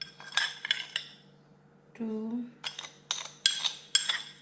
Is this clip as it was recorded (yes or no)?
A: yes